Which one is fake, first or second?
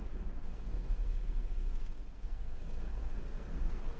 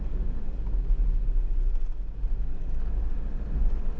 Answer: first